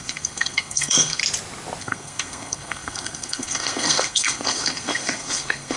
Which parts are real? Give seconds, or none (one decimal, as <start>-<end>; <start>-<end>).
1.2-1.8